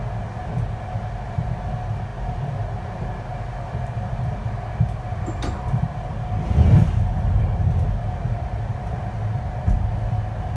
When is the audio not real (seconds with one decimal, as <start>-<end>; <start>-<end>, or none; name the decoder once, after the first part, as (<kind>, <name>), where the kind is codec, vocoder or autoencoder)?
none